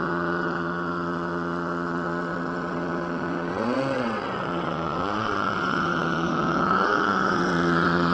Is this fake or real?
fake